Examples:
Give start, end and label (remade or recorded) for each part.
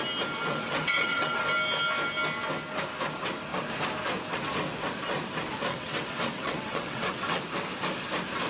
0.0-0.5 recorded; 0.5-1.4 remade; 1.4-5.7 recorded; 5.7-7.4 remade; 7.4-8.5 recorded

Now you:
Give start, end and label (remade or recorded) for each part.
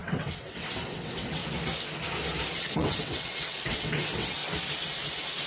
0.0-1.4 remade; 1.4-2.6 recorded; 2.6-4.4 remade; 4.4-5.5 recorded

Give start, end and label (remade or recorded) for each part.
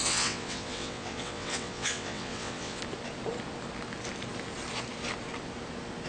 0.0-2.8 remade; 2.8-6.1 recorded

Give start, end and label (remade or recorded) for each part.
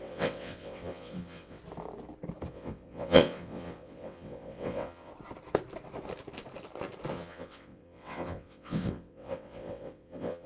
0.0-1.6 remade; 1.6-2.5 recorded; 2.5-5.1 remade; 5.1-7.1 recorded; 7.1-10.5 remade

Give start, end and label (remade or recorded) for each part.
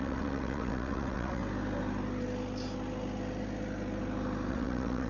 0.0-1.4 remade; 1.4-4.5 recorded; 4.5-5.1 remade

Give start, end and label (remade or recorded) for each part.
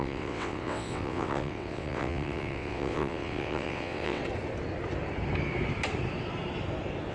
0.0-4.2 remade; 4.2-7.1 recorded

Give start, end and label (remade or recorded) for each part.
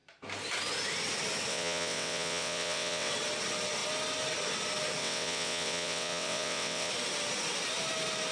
0.0-1.5 recorded; 1.5-3.1 remade; 3.1-5.0 recorded; 5.0-6.9 remade; 6.9-8.3 recorded